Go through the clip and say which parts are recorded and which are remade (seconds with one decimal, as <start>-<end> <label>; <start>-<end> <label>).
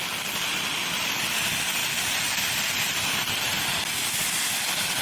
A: 0.0-5.0 recorded